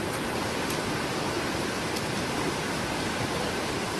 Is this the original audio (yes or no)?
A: yes